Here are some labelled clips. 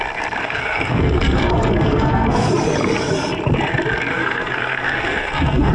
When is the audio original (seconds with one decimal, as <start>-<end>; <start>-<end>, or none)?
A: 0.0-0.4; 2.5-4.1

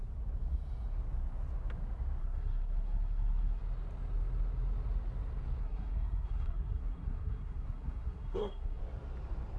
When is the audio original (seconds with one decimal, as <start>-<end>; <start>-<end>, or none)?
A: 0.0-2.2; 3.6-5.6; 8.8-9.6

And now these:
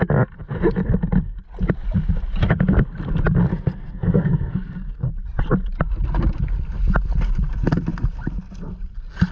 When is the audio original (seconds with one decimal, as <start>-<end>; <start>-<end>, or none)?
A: 0.0-3.5; 5.1-9.3

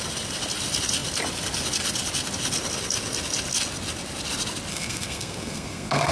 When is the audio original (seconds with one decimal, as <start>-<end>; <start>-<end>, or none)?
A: 0.0-4.7

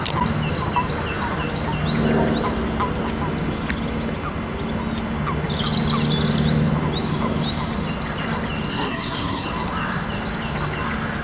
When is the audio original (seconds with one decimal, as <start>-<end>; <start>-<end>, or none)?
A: 0.0-8.7; 9.5-11.2